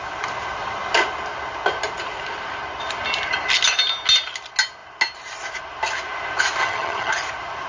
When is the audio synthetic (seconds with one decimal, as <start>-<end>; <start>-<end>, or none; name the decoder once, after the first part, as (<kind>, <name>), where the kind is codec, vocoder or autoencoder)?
6.6-7.1 (vocoder, HiFi-GAN)